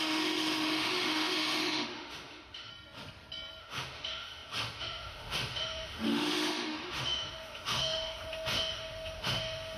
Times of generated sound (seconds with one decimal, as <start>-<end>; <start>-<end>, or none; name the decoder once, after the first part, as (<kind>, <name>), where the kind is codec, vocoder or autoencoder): 0.0-2.7 (autoencoder, DAC-VAE); 3.6-9.8